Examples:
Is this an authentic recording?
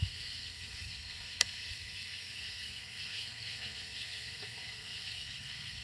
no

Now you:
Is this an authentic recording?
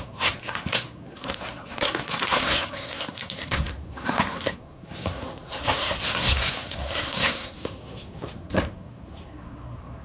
no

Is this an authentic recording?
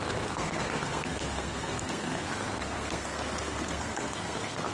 no